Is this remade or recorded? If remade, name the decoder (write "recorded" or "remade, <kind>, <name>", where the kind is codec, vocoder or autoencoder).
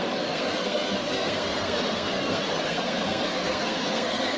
remade, codec, SNAC